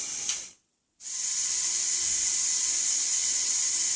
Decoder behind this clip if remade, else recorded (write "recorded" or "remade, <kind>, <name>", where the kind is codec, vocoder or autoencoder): recorded